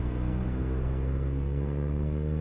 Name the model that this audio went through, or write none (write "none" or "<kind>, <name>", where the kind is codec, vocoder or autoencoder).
codec, SNAC